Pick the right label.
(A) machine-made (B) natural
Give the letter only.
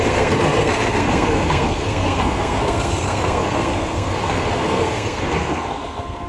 A